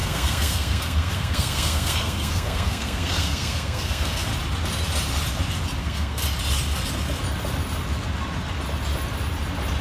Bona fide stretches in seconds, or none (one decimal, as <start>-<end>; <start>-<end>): 4.3-5.8; 6.2-9.8